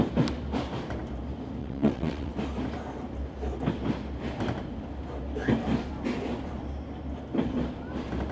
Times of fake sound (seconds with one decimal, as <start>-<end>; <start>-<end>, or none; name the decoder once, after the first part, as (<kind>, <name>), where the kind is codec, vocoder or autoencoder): 1.6-2.3 (vocoder, WaveNeXt)